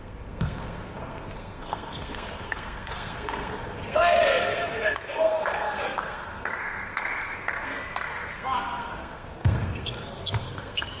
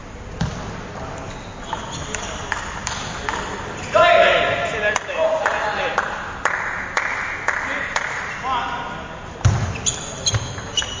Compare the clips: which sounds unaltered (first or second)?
second